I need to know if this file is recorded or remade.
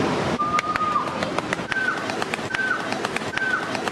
recorded